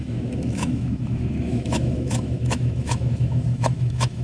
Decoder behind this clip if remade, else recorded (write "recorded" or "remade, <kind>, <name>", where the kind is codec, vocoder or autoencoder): remade, autoencoder, DAC-VAE